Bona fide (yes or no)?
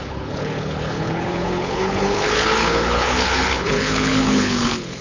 no